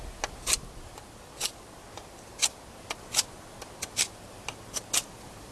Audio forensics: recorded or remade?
recorded